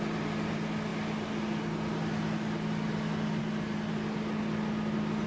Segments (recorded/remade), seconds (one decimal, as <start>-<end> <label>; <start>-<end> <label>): 0.0-5.3 recorded